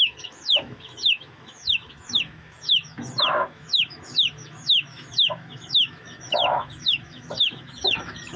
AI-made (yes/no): yes